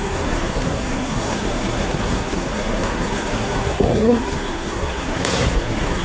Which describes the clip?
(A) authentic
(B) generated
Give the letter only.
B